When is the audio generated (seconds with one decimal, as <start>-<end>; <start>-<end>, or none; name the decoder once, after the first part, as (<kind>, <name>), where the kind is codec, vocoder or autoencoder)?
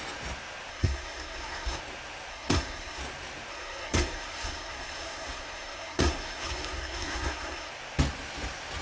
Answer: 0.7-1.8 (codec, SNAC); 2.3-3.0; 3.5-7.7